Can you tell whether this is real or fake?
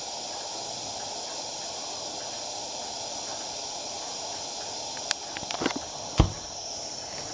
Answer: real